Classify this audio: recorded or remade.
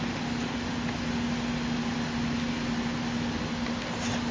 recorded